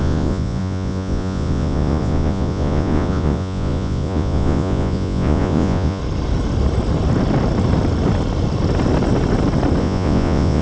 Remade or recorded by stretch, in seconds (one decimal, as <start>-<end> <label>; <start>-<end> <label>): 0.0-6.0 remade; 6.0-9.8 recorded; 9.8-10.6 remade